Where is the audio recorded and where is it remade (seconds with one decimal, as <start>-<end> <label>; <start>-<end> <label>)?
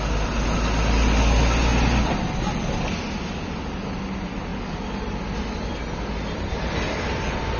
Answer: 0.0-7.6 recorded